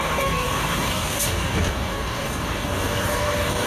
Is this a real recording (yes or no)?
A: no